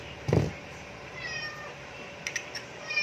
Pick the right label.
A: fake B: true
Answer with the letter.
A